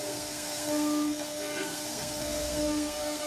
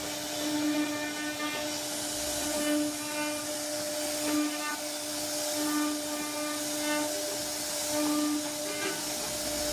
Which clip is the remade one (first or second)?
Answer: first